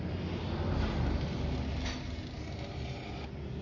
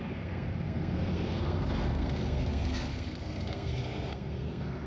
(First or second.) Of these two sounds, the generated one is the second